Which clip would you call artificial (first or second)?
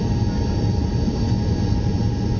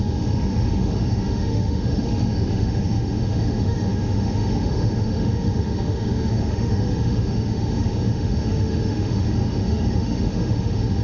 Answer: second